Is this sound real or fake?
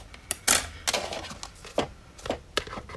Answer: real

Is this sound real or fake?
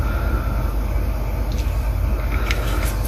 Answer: real